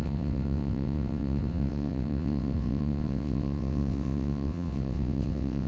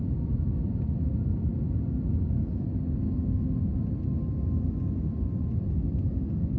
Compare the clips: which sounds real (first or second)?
second